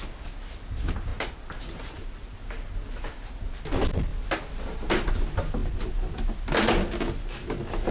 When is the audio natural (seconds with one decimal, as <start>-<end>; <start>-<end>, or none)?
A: 0.0-7.9